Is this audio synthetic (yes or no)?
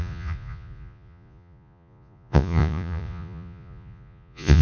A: yes